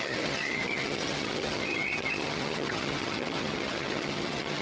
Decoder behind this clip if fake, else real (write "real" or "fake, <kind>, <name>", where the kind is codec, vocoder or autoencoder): fake, vocoder, HiFi-GAN